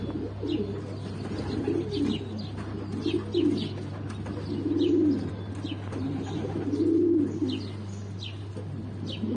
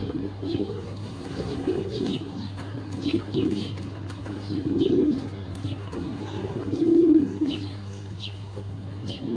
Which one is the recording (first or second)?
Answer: first